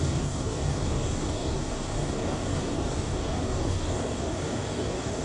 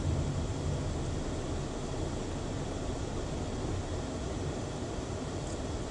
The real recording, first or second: second